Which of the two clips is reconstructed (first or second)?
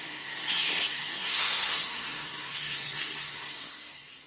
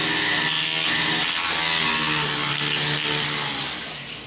first